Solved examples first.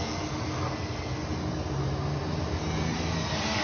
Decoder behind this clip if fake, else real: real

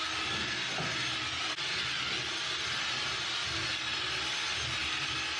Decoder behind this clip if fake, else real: real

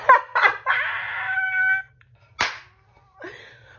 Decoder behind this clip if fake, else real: real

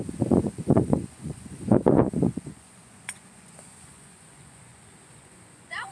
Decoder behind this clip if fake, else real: fake, vocoder, Vocos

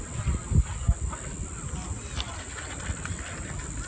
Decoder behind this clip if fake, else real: real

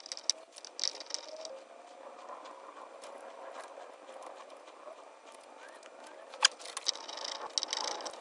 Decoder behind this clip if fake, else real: real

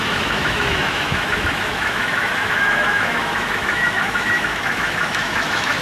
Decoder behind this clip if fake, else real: fake, autoencoder, DAC-VAE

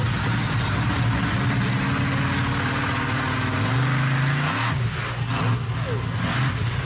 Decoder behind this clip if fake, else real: real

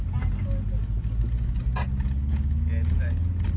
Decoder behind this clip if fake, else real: real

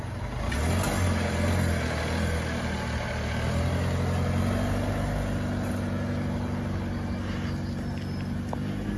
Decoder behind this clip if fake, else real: real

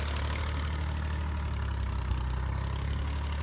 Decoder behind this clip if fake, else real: real